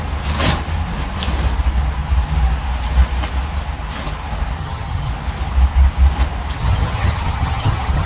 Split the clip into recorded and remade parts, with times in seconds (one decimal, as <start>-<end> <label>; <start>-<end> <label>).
0.0-4.6 recorded; 4.6-5.1 remade; 5.1-6.6 recorded; 6.6-8.1 remade